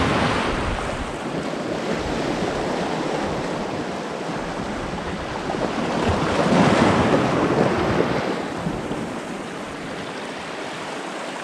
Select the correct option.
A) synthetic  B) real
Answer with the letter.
B